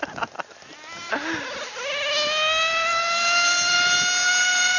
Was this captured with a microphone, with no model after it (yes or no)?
yes